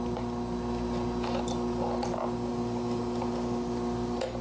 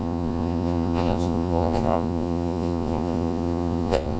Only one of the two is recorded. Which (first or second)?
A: first